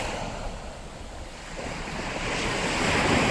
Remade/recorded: recorded